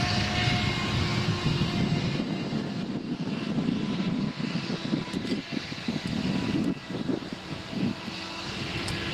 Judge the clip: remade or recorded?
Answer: recorded